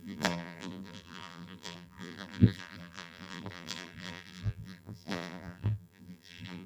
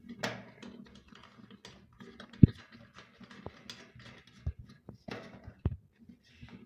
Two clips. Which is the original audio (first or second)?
second